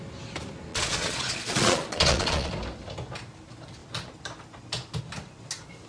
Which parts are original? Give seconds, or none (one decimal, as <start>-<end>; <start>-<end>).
0.0-0.7; 2.5-5.9